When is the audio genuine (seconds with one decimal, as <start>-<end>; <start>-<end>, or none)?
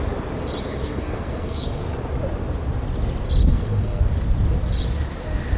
0.0-0.7; 1.8-3.5; 4.0-5.6